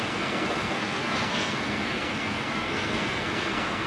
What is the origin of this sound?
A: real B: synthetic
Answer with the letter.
B